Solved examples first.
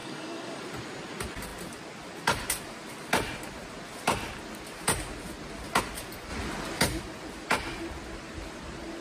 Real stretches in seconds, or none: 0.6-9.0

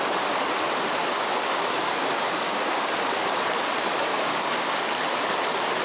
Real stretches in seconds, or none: 0.0-1.0; 2.9-4.1; 4.9-5.8

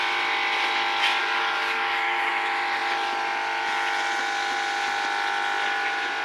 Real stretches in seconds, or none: 0.0-1.2; 2.3-6.2

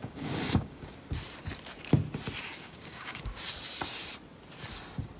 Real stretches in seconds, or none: 1.0-2.6; 3.2-5.2

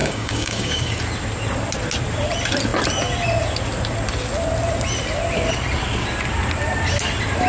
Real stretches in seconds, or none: 1.0-7.5

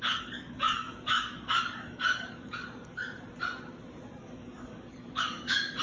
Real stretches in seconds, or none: 3.0-4.2

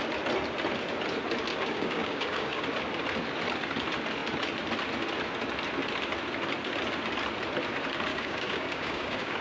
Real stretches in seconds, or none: 0.0-1.5; 2.6-8.1

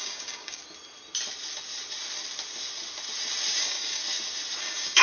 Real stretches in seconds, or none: 0.6-3.6; 4.0-4.6